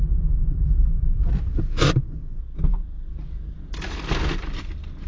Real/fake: real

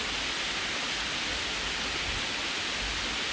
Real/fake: real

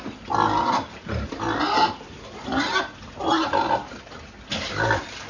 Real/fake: real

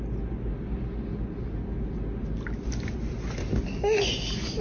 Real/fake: real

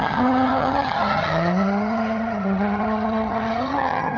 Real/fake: fake